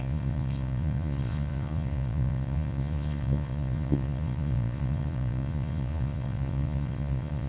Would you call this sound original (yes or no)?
no